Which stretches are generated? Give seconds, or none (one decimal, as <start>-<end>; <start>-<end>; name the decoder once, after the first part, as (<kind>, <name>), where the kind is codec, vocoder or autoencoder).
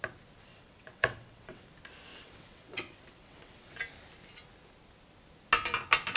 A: 0.5-1.6 (vocoder, WaveNeXt); 2.1-3.7